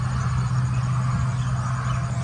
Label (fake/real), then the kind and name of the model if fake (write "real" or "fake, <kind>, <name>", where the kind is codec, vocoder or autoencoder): real